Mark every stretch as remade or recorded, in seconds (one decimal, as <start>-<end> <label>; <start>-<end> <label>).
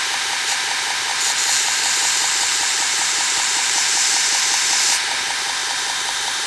0.0-1.1 recorded; 1.1-1.8 remade; 1.8-2.5 recorded; 2.5-4.3 remade; 4.3-5.6 recorded; 5.6-6.5 remade